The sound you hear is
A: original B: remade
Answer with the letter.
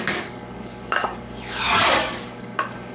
B